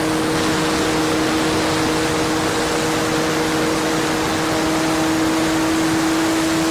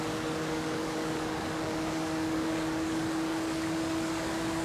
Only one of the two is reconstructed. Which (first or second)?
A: second